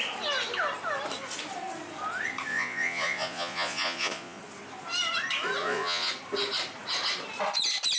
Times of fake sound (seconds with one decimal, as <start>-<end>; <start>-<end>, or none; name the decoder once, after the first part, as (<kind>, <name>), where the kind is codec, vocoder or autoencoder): 2.5-4.4 (vocoder, Vocos); 5.6-6.1